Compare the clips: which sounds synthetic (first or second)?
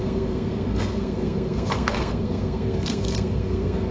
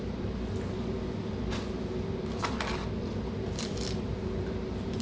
first